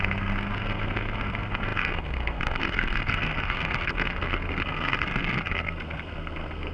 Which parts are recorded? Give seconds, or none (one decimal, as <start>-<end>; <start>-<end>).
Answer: none

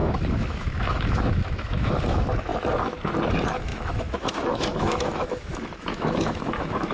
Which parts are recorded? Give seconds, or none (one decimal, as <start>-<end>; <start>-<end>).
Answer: 2.5-3.3